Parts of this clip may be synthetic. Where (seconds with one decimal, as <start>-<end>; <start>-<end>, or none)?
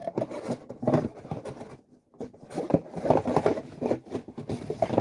none